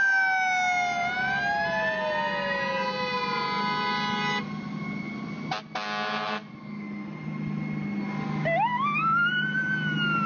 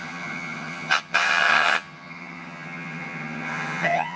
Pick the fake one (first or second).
second